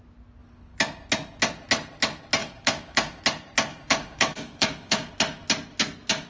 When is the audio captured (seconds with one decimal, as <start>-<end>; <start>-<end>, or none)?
0.0-2.4; 3.2-3.7; 5.1-6.3